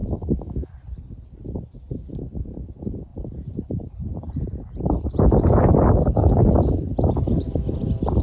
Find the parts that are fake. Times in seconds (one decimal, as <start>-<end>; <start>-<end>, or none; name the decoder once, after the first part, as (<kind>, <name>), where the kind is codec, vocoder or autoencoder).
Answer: 0.0-0.7 (autoencoder, DAC-VAE)